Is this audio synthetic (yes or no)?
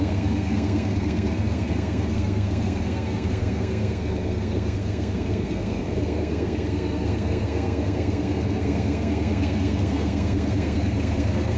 yes